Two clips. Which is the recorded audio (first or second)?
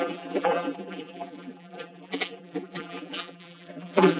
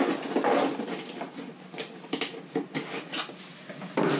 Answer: second